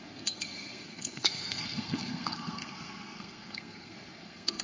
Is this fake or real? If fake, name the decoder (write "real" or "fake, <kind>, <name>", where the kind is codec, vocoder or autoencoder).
fake, codec, SNAC